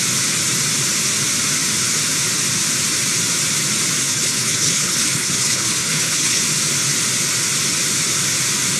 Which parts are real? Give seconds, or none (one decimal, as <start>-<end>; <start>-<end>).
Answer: 0.0-4.0; 6.4-8.8